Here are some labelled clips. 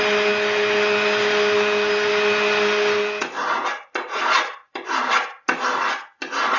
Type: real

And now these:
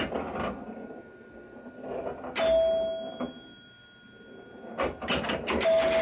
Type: real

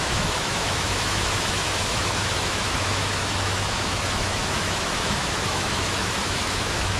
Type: fake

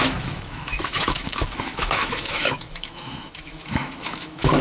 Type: fake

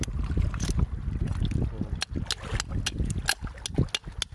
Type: real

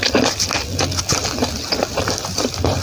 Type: real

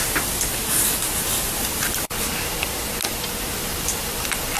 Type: real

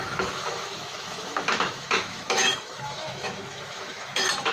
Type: fake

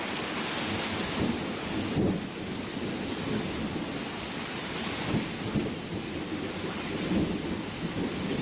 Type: real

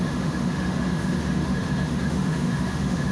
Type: fake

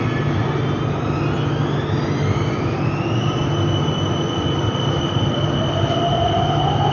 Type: real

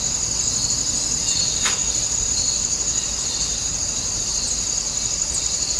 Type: real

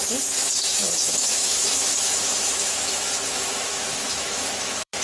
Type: fake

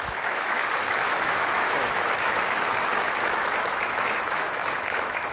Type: fake